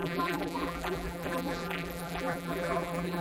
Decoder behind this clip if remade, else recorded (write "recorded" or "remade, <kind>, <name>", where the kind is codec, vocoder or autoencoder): remade, vocoder, BigVGAN v2